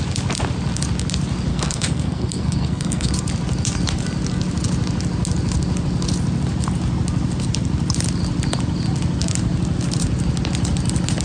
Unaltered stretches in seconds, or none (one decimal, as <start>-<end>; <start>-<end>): 0.0-1.5; 3.1-11.2